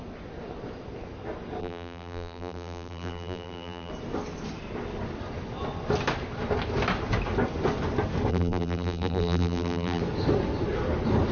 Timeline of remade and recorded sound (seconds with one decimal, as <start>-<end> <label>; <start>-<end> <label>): 0.0-1.6 recorded; 1.6-3.9 remade; 3.9-8.3 recorded; 8.3-10.0 remade; 10.0-11.3 recorded